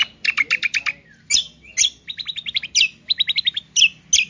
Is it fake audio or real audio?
real